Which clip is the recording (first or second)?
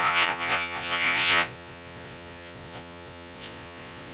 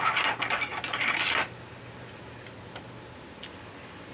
second